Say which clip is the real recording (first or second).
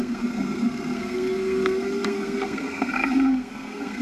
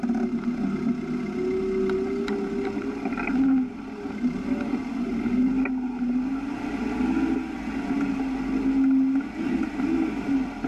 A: second